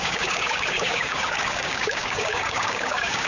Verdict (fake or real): fake